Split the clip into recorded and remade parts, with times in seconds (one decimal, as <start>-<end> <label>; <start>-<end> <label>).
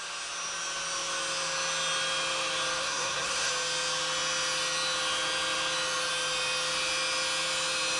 0.0-2.8 recorded; 2.8-3.5 remade; 3.5-8.0 recorded